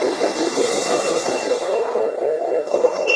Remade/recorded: remade